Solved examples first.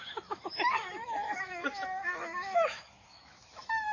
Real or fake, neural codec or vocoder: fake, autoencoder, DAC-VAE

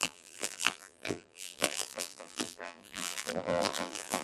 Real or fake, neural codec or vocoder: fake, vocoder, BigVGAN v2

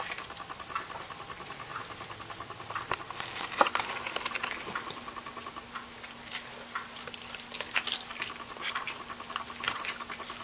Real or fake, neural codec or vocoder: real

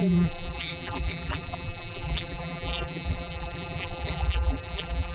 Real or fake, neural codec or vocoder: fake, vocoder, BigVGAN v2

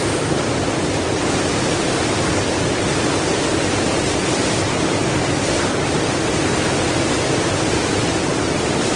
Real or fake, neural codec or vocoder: real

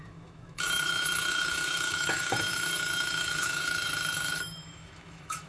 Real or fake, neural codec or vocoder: fake, autoencoder, DAC-VAE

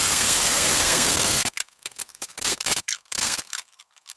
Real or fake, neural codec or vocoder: fake, codec, SNAC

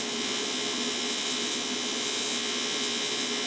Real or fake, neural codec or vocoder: real